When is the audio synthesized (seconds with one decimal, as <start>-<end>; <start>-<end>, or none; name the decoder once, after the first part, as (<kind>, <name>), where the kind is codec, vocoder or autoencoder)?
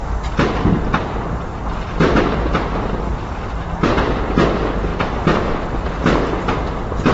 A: 0.0-1.0 (vocoder, BigVGAN v2); 1.5-2.2; 3.1-3.9; 4.9-5.8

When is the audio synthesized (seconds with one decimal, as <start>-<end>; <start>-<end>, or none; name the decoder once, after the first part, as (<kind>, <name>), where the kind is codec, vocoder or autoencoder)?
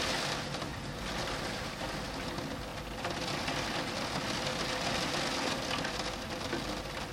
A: none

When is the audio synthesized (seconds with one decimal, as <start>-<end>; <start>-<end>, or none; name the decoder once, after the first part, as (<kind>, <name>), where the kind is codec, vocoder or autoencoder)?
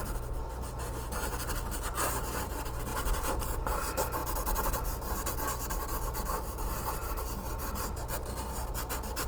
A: 2.9-3.7 (vocoder, BigVGAN v2); 7.0-7.8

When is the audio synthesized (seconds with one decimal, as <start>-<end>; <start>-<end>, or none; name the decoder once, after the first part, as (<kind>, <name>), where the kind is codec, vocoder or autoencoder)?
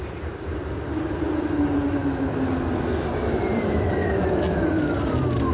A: 0.0-2.0 (vocoder, BigVGAN v2); 3.2-4.0; 4.5-5.5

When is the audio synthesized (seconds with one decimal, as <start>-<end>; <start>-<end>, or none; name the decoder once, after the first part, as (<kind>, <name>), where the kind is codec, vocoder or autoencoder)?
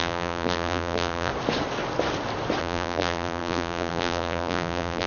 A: 0.0-1.3 (vocoder, BigVGAN v2); 2.6-5.1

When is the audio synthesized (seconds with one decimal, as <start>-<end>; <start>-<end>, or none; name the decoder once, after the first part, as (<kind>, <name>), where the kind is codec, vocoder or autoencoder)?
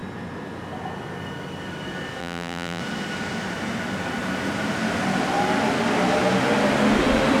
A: 2.2-2.8 (vocoder, BigVGAN v2)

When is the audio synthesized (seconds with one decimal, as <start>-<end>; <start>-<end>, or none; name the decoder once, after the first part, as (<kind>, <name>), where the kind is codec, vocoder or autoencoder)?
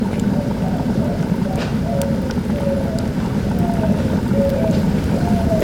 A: 0.0-1.7 (vocoder, BigVGAN v2); 4.5-5.6